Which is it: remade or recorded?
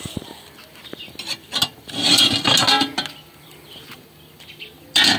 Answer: recorded